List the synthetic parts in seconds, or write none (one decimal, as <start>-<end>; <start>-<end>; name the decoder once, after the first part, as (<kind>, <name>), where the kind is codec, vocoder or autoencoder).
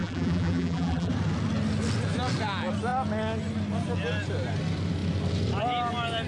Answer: 0.0-1.1 (vocoder, BigVGAN v2)